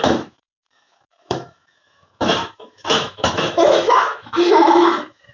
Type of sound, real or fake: fake